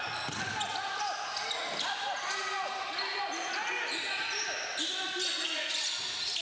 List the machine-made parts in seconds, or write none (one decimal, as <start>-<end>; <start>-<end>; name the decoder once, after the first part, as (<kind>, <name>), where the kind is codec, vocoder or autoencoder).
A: none